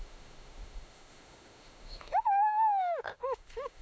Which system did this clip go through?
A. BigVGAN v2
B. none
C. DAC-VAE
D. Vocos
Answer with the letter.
C